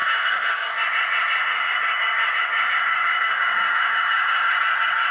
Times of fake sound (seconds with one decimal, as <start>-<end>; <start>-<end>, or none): 0.0-0.7; 1.4-4.5